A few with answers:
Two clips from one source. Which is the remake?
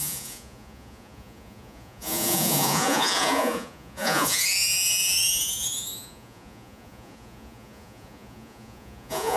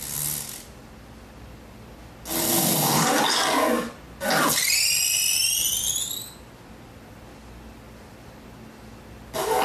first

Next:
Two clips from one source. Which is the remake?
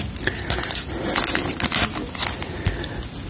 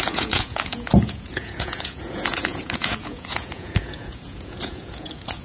second